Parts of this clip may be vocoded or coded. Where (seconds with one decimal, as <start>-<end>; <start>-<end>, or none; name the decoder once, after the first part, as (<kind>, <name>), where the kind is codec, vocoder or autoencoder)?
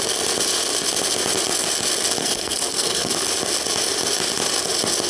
2.2-3.1 (codec, SNAC)